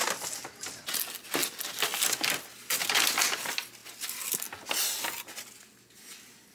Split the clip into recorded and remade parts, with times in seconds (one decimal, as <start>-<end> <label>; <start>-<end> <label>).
0.0-6.5 recorded